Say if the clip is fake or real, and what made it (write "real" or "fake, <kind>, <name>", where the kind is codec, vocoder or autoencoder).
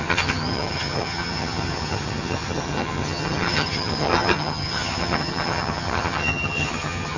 fake, vocoder, HiFi-GAN